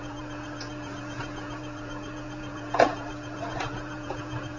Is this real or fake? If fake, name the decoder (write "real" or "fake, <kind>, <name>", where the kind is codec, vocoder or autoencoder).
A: fake, vocoder, Vocos